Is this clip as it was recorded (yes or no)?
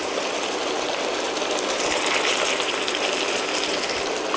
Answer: yes